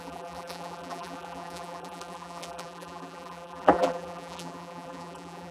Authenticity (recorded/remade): remade